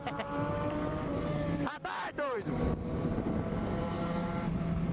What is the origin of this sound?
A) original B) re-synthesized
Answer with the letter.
B